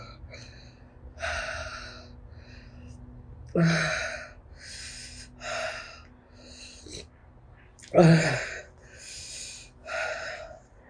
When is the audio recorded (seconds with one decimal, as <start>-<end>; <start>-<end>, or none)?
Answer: 0.0-10.9